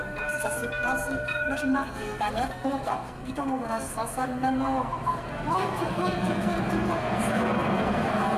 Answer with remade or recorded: remade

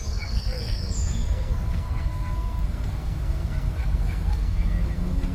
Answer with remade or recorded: remade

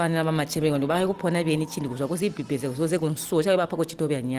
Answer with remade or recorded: recorded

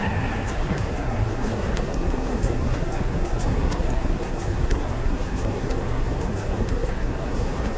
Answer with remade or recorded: remade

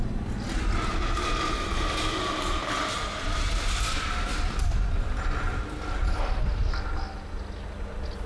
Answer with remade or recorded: recorded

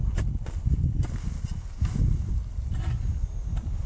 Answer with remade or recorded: recorded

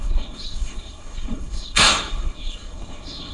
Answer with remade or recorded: remade